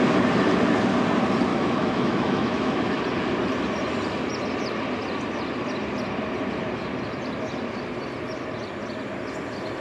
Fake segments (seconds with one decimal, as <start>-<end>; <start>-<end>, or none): 1.5-3.0

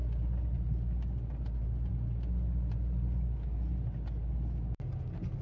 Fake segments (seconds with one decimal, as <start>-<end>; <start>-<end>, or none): none

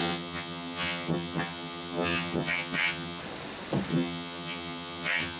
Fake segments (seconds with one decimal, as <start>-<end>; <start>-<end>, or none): 0.0-3.2; 3.9-5.4

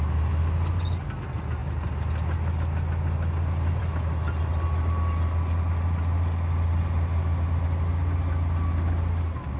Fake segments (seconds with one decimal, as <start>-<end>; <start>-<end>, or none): none

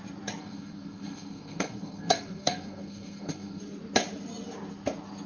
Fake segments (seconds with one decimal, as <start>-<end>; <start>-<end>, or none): 0.4-3.6

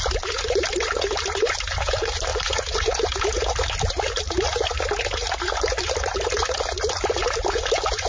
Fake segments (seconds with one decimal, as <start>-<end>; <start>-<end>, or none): 2.3-2.8

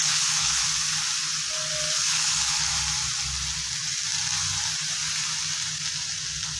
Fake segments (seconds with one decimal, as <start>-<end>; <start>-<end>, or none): 0.0-0.6; 2.1-2.7

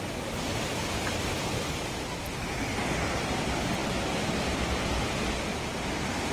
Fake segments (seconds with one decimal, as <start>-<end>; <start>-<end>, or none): 0.5-2.1; 2.7-3.2